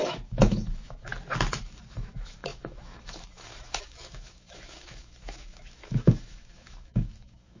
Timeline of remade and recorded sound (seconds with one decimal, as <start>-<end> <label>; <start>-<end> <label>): 0.0-1.1 remade; 1.1-1.6 recorded; 1.6-7.6 remade